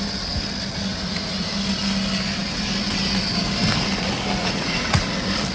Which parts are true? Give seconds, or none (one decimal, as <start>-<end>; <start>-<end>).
0.0-0.9; 1.5-4.4; 5.0-5.5